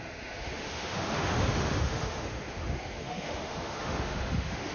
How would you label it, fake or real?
fake